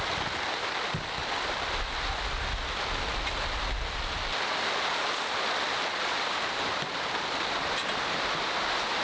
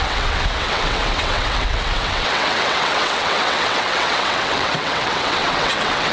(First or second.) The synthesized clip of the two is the second